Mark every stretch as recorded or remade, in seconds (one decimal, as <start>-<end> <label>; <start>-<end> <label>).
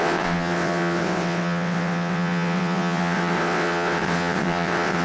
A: 0.0-5.0 remade